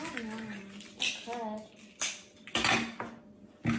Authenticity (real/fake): real